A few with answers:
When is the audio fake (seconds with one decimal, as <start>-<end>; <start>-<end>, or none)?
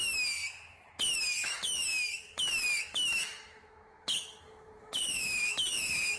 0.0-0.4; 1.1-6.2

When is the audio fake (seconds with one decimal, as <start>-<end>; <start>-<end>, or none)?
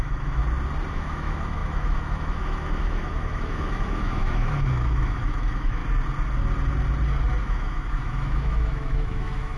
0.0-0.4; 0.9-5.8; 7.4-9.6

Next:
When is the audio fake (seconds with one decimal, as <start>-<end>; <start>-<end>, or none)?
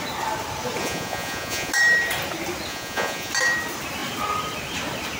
0.8-1.7; 2.7-3.3